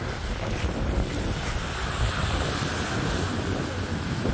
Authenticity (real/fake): real